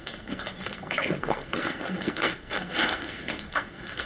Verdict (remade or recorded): remade